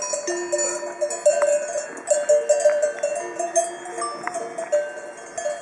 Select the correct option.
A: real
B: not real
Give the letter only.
A